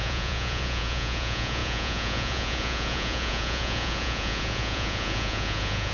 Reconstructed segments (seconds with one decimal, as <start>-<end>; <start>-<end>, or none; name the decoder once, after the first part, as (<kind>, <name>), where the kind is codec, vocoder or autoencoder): 0.0-5.9 (vocoder, Vocos)